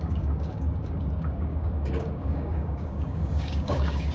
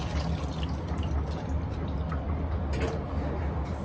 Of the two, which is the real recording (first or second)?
second